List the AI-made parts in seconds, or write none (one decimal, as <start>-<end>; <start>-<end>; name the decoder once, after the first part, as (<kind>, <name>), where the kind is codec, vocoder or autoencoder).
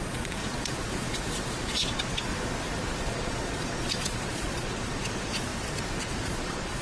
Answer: 0.0-2.3 (vocoder, Vocos); 3.1-5.5; 6.0-6.8